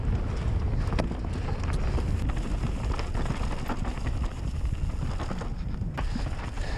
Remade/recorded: recorded